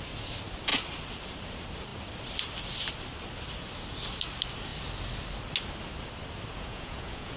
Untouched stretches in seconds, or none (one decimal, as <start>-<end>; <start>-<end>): 0.0-6.5